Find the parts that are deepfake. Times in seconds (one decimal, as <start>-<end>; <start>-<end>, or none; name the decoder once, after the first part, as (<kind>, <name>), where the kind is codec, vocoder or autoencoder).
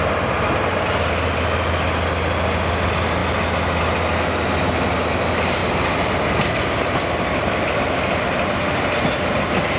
none